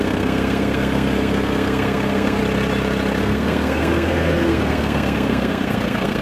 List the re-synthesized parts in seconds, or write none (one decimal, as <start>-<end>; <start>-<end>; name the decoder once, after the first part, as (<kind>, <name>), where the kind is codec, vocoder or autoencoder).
0.0-2.4 (codec, SNAC); 3.2-6.2